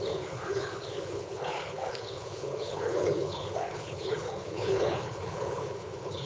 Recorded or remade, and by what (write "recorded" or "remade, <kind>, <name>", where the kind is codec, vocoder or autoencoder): remade, codec, HILCodec